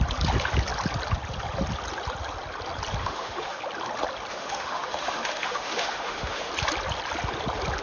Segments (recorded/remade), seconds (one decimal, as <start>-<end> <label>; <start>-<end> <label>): 0.0-3.0 recorded; 3.0-3.6 remade; 3.6-4.3 recorded; 4.3-6.5 remade; 6.5-7.8 recorded